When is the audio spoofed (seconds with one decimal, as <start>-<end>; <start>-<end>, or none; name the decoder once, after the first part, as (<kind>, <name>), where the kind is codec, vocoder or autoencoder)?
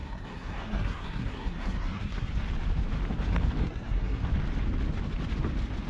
0.0-2.3 (codec, SNAC); 3.6-4.2